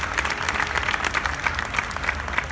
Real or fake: real